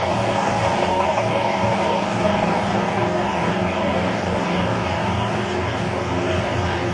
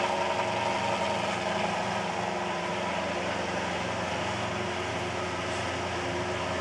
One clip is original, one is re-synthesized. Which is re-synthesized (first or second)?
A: first